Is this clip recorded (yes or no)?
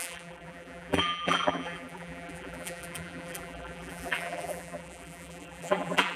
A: no